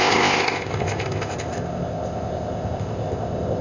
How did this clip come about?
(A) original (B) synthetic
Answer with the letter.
B